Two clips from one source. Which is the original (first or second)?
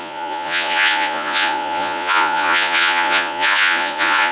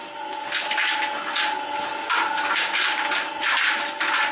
second